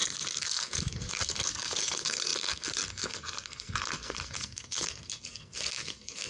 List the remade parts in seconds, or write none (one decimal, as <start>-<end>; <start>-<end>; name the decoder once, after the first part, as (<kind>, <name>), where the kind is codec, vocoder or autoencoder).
0.0-6.3 (codec, SNAC)